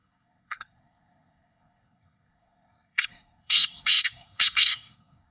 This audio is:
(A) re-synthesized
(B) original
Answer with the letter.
A